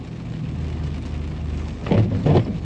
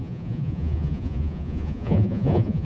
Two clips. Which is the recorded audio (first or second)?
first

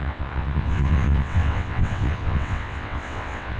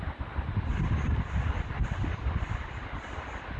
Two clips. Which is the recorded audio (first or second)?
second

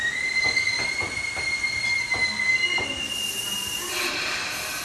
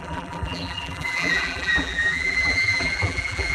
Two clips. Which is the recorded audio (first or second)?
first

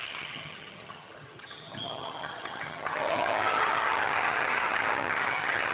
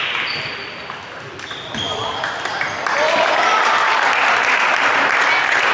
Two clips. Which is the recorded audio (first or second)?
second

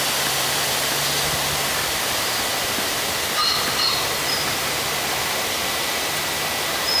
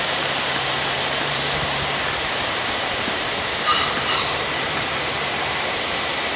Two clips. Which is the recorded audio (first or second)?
first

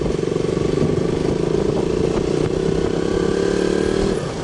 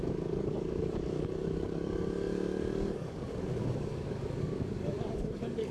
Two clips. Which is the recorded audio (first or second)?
first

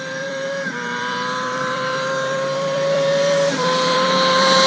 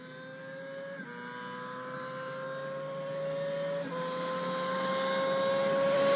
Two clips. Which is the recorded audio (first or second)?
second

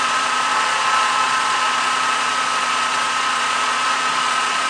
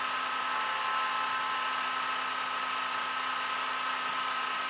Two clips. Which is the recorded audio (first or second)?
second